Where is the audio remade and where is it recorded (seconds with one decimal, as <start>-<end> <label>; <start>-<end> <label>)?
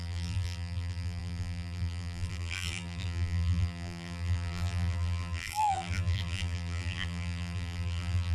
0.0-8.3 remade